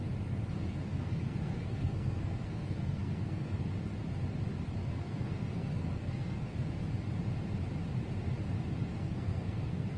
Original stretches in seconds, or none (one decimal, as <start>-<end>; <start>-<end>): 0.0-0.7; 3.7-4.9; 6.5-8.9